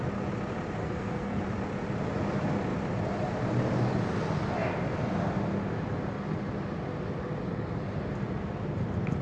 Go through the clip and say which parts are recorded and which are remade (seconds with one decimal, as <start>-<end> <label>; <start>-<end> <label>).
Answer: 0.0-0.8 recorded; 0.8-1.4 remade; 1.4-9.2 recorded